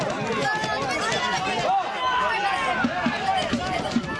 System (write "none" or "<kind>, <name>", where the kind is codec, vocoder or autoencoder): none